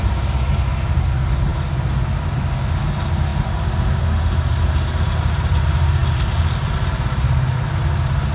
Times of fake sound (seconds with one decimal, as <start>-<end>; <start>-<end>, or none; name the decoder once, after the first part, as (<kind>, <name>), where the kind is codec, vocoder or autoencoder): none